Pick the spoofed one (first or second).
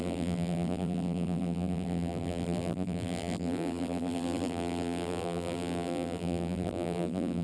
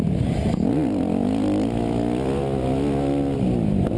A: first